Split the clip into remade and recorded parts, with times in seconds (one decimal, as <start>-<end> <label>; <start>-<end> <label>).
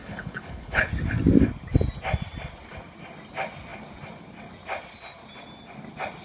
0.0-0.9 remade; 0.9-6.2 recorded